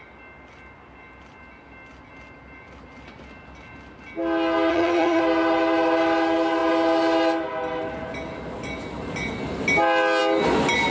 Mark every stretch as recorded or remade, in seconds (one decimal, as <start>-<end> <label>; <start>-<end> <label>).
0.0-4.7 recorded; 4.7-5.2 remade; 5.2-10.9 recorded